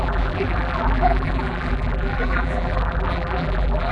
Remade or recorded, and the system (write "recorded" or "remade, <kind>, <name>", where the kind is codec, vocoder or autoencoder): remade, vocoder, BigVGAN v2